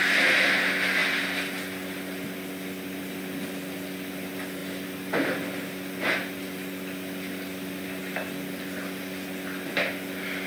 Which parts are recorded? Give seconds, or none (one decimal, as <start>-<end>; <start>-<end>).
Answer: 0.0-10.5